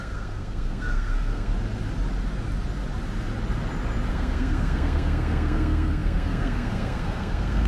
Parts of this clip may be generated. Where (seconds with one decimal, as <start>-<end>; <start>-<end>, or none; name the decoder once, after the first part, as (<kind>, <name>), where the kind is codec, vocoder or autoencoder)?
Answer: 0.0-1.5 (codec, SNAC); 4.1-7.7